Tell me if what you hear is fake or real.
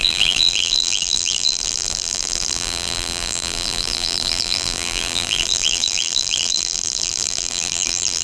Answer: fake